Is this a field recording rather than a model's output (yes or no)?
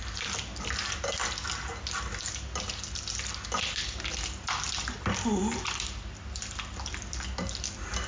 yes